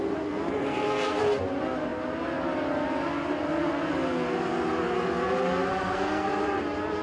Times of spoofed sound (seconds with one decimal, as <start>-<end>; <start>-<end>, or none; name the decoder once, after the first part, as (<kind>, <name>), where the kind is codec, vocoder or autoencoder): 0.6-1.2 (codec, SNAC); 5.7-6.3